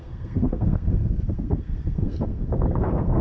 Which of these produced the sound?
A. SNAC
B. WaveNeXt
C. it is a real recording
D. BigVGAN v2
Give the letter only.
A